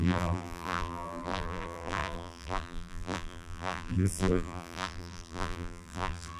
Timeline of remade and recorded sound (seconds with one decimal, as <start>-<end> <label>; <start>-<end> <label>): 0.0-6.4 remade